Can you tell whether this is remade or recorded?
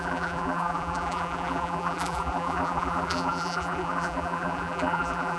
remade